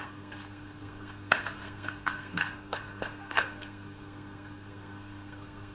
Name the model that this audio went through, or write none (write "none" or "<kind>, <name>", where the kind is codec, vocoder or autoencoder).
codec, SNAC